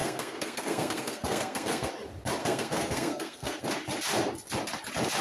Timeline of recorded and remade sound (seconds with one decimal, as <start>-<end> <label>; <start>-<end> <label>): 0.0-1.9 remade; 1.9-2.4 recorded; 2.4-3.6 remade; 3.6-5.2 recorded